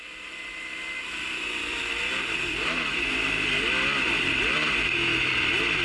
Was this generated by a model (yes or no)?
yes